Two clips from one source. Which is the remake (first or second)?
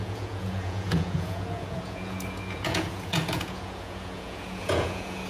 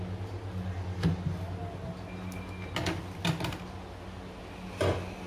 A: first